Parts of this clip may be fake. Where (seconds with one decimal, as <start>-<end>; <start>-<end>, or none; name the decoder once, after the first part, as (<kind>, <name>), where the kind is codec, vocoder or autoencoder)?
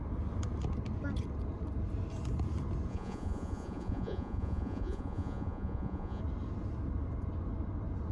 2.9-6.2 (vocoder, Vocos)